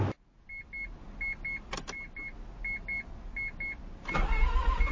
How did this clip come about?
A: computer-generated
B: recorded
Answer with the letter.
B